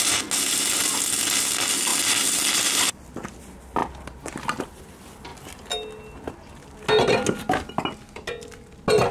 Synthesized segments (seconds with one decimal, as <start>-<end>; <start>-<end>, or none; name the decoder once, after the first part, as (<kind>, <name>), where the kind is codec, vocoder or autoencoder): 1.9-3.4 (vocoder, BigVGAN v2)